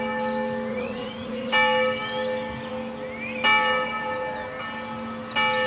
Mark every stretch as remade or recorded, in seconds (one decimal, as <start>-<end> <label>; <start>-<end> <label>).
0.0-0.7 recorded; 0.7-1.5 remade; 1.5-5.7 recorded